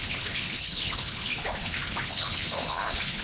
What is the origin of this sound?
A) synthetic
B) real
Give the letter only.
A